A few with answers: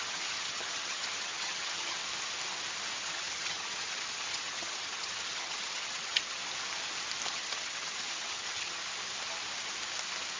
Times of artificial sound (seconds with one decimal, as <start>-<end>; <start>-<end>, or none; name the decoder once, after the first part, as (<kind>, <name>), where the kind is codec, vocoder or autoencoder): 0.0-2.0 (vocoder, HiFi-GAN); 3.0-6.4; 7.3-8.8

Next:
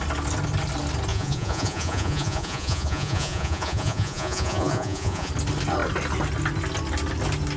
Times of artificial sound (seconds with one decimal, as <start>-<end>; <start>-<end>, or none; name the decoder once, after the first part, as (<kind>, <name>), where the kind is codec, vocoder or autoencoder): 1.1-5.3 (vocoder, Vocos)

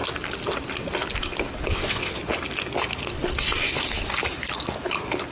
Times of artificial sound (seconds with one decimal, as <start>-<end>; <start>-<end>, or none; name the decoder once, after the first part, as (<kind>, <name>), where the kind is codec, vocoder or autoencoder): 1.7-2.2 (vocoder, WaveNeXt)

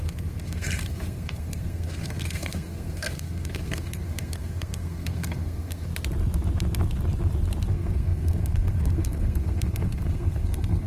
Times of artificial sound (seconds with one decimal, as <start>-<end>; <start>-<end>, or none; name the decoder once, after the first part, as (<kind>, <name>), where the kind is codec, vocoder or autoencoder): 0.0-5.9 (codec, SNAC); 7.7-10.9

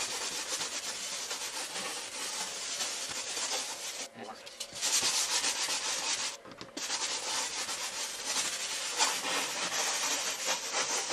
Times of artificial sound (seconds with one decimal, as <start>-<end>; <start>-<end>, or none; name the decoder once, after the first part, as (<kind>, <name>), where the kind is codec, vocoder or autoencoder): none

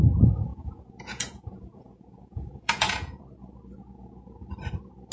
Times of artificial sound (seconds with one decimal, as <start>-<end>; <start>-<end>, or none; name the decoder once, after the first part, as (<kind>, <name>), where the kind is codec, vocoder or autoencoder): 0.5-3.2 (vocoder, Vocos)